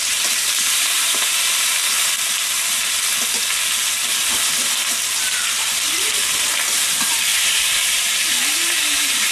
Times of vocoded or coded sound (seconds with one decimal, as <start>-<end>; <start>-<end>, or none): 0.0-1.8; 6.3-9.3